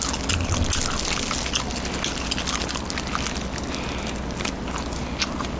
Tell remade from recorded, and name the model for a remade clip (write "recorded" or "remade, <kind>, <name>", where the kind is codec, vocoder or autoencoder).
recorded